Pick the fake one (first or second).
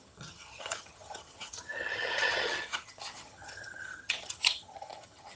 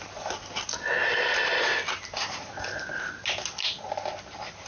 first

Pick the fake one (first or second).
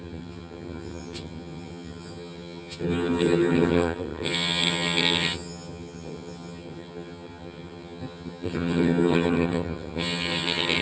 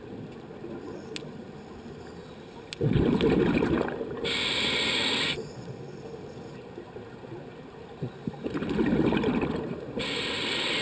first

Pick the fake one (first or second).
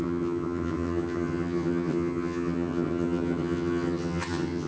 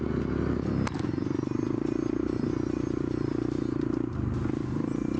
first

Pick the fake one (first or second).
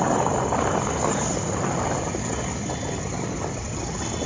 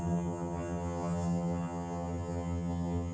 second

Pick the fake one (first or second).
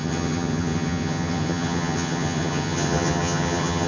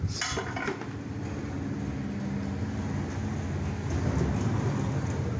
first